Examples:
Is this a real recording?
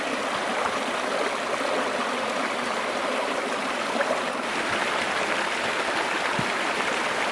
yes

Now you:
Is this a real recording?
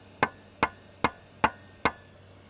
yes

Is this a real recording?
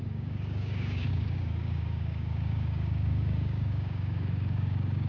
no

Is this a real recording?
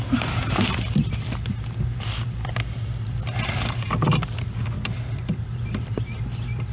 yes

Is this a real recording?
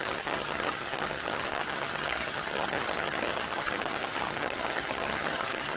no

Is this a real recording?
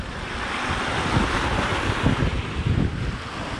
yes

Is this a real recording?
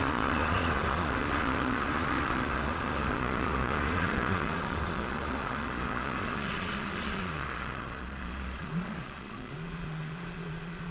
no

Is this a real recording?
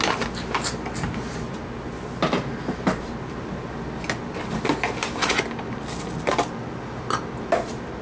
yes